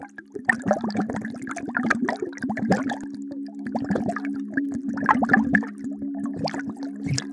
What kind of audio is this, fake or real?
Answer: real